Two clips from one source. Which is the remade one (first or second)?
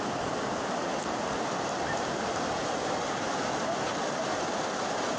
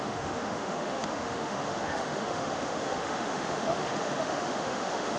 second